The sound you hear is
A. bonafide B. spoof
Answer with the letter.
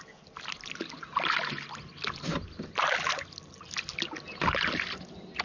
A